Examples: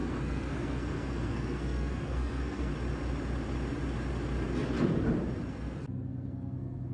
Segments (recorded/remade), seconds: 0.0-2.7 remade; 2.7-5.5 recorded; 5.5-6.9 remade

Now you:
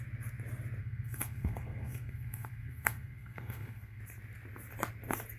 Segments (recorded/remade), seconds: 0.0-0.8 recorded; 0.8-4.0 remade; 4.0-5.4 recorded

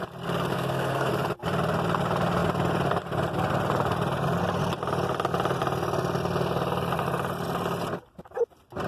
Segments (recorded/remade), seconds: 0.0-0.5 recorded; 0.5-1.1 remade; 1.1-8.9 recorded

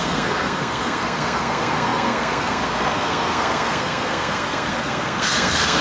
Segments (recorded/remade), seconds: 0.0-5.8 remade

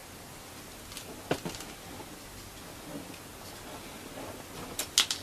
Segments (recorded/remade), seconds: 0.0-5.2 recorded